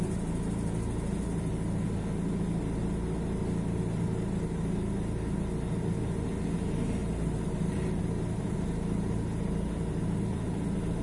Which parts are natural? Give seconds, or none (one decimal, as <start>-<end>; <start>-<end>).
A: 0.0-11.0